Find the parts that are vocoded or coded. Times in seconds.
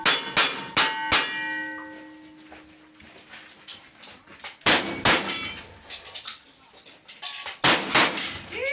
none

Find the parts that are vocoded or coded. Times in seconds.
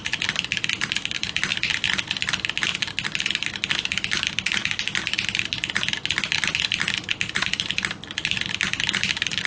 none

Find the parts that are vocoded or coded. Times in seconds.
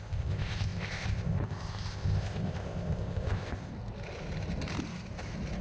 0.0-3.7 (codec, ZipCodec)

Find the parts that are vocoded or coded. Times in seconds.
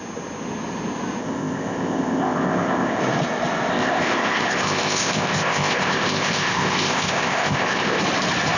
1.2-3.0 (codec, ZipCodec); 3.7-8.0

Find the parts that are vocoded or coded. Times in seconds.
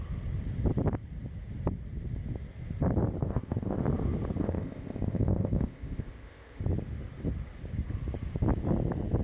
3.2-3.8 (codec, ZipCodec); 4.4-6.6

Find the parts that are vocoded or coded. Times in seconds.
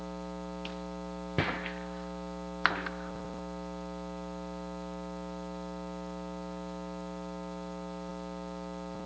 none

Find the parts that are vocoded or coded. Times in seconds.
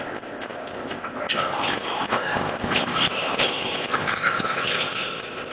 0.0-5.5 (codec, ZipCodec)